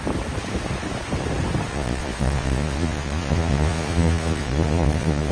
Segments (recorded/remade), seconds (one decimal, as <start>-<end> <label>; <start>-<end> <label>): 0.0-1.7 recorded; 1.7-5.3 remade